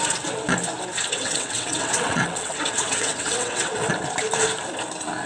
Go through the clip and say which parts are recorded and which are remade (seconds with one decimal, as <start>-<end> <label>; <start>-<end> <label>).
0.0-1.1 recorded; 1.1-3.9 remade; 3.9-5.3 recorded